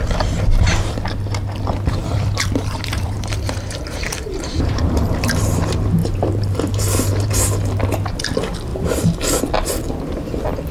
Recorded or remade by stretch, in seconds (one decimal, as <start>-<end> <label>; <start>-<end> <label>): 0.0-2.0 recorded; 2.0-5.6 remade; 5.6-6.0 recorded; 6.0-7.3 remade; 7.3-10.7 recorded